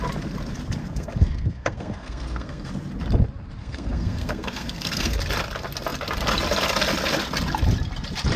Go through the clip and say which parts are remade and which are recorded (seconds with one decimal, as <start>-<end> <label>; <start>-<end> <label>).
0.0-0.8 recorded; 0.8-2.7 remade; 2.7-3.6 recorded; 3.6-5.2 remade; 5.2-8.4 recorded